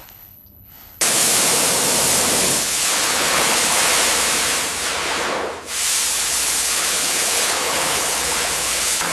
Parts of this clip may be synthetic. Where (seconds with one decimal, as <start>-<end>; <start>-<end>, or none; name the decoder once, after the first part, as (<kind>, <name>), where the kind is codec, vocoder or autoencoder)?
0.0-1.2 (codec, HILCodec); 2.4-3.8; 6.1-9.1